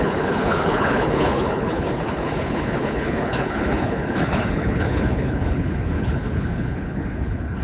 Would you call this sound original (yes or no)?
no